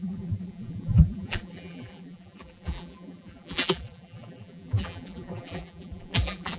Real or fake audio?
fake